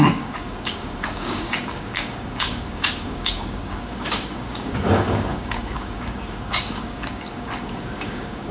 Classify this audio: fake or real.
fake